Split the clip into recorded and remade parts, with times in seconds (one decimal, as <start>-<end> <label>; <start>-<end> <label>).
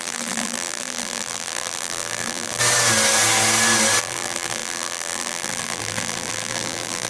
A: 0.0-2.6 remade; 2.6-4.0 recorded; 4.0-7.1 remade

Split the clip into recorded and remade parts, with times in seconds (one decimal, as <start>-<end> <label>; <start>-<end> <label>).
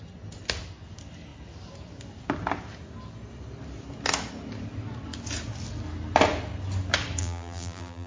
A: 0.0-7.2 recorded; 7.2-8.1 remade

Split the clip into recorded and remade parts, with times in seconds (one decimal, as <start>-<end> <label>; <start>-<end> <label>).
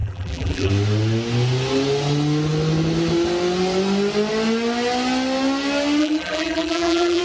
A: 0.0-0.7 remade; 0.7-6.0 recorded; 6.0-7.2 remade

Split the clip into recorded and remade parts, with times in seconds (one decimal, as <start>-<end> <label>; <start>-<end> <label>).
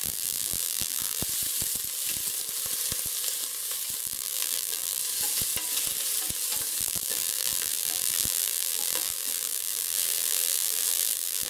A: 0.0-1.2 remade; 1.2-4.0 recorded; 4.0-5.0 remade; 5.0-6.8 recorded; 6.8-11.5 remade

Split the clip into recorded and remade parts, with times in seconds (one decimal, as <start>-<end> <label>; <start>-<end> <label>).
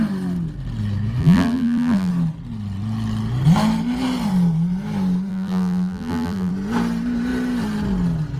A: 0.0-1.2 recorded; 1.2-2.1 remade; 2.1-5.3 recorded; 5.3-6.5 remade; 6.5-8.4 recorded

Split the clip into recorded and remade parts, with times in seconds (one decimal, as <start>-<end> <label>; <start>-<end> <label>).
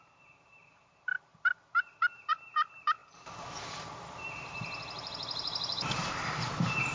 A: 0.0-6.9 remade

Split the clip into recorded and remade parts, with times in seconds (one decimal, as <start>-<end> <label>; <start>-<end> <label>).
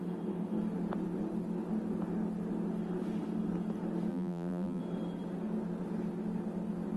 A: 0.0-4.1 recorded; 4.1-4.8 remade; 4.8-7.0 recorded